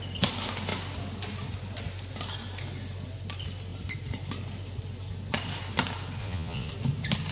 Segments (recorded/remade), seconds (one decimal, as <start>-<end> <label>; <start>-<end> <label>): 0.0-6.2 recorded; 6.2-6.7 remade; 6.7-7.3 recorded